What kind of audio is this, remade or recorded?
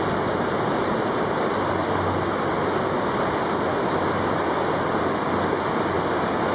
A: recorded